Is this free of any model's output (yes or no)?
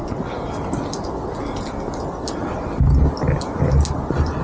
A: yes